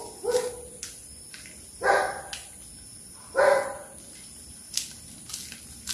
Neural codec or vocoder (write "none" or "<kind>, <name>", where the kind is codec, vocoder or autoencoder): none